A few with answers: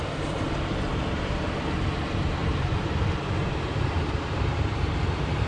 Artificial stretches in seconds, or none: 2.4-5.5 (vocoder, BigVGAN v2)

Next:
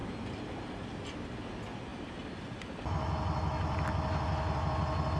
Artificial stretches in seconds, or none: none